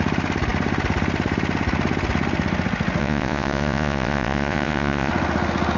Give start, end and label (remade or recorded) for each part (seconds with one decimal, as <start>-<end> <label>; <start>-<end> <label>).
0.0-3.0 recorded; 3.0-5.1 remade; 5.1-5.8 recorded